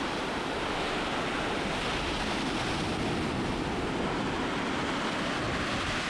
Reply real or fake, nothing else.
real